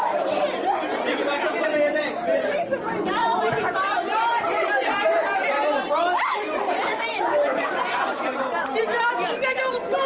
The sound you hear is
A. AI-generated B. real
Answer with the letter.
A